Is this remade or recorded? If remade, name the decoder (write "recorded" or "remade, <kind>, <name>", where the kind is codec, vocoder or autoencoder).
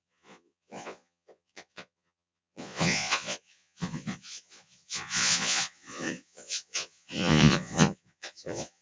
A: remade, vocoder, Vocos